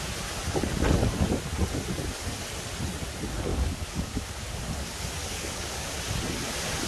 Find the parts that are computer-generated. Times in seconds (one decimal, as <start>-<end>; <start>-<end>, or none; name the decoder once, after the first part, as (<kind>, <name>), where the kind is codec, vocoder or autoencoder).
3.5-4.3 (codec, DAC); 5.2-6.0